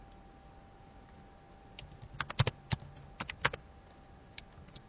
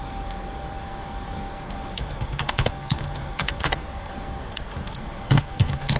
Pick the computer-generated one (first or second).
second